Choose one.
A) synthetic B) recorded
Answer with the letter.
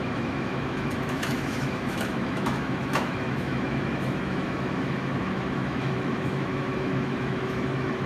A